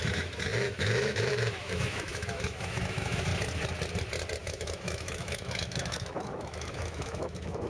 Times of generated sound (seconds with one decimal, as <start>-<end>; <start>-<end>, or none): 0.0-3.3; 4.4-7.7